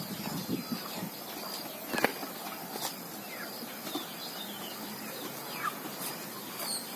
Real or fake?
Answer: real